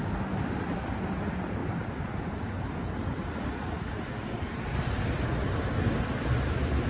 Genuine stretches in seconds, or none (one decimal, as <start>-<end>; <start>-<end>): 0.0-6.9